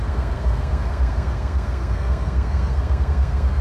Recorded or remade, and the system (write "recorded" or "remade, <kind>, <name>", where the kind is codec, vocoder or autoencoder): remade, codec, SNAC